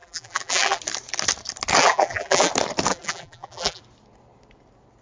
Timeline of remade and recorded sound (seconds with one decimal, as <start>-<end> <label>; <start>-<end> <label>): 0.0-0.8 remade; 0.8-1.8 recorded; 1.8-2.5 remade; 2.5-2.9 recorded; 2.9-3.8 remade; 3.8-5.0 recorded